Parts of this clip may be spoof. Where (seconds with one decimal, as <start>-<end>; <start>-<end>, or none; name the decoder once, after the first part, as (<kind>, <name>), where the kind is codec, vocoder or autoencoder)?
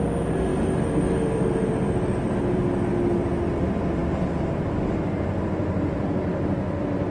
0.0-2.9 (vocoder, BigVGAN v2); 3.5-4.0; 5.4-7.1